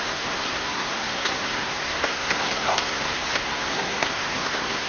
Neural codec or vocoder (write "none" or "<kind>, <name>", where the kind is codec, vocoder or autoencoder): codec, SNAC